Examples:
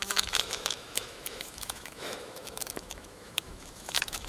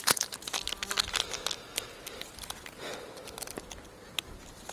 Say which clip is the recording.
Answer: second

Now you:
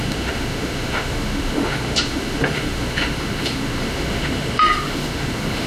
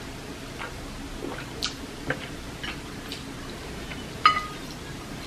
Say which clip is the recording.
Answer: second